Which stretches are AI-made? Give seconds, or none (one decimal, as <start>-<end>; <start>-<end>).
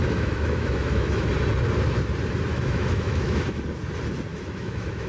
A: 0.0-1.3; 2.5-3.6; 4.3-5.1